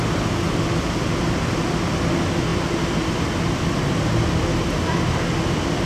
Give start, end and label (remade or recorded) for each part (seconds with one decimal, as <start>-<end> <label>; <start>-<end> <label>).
0.0-5.9 recorded